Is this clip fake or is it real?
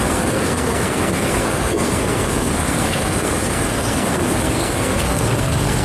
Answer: fake